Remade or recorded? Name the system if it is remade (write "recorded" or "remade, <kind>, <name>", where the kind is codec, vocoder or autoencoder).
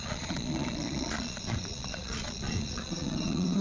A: remade, vocoder, Vocos